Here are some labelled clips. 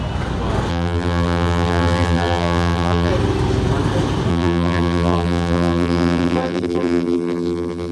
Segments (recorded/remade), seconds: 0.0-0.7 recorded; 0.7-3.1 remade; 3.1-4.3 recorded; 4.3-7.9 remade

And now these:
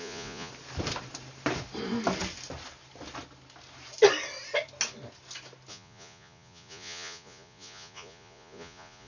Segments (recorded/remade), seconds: 0.0-0.5 remade; 0.5-5.7 recorded; 5.7-9.1 remade

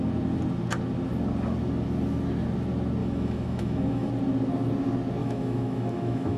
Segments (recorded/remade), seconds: 0.0-3.0 recorded; 3.0-4.1 remade; 4.1-5.2 recorded; 5.2-6.4 remade